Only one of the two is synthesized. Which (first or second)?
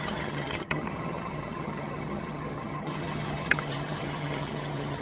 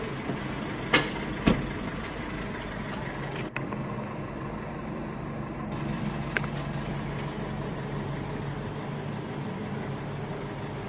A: first